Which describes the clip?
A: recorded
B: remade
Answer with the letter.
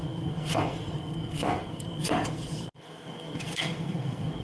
B